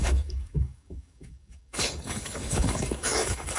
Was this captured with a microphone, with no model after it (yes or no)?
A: no